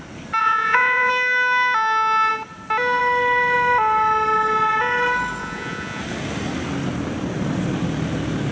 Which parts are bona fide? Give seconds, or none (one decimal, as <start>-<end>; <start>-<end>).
0.0-0.4; 1.1-5.4; 6.0-8.5

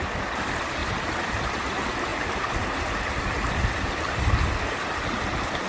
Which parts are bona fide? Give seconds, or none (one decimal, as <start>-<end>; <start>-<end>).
0.0-5.7

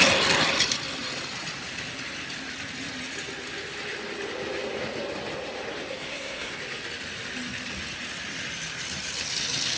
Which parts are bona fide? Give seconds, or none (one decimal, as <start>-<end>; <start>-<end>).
0.0-5.9; 6.5-9.8